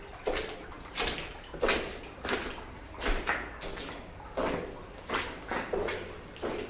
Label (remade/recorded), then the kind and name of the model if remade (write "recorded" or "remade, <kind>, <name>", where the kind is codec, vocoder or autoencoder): recorded